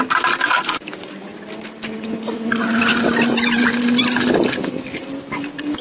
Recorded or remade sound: recorded